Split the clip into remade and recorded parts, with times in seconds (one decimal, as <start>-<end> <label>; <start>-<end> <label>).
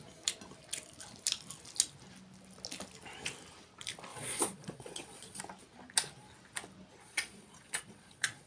0.0-4.1 recorded; 4.1-5.4 remade; 5.4-7.0 recorded; 7.0-8.5 remade